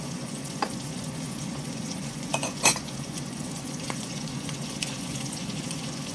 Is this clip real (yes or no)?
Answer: no